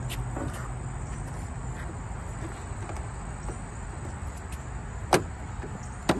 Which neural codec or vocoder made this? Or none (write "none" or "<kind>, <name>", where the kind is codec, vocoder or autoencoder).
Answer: none